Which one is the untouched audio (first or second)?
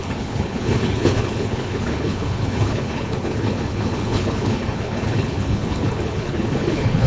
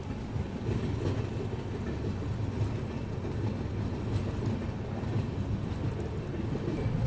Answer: second